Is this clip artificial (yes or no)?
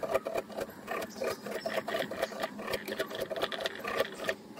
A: no